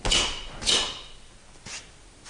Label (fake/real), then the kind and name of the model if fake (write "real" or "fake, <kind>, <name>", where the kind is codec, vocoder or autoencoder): real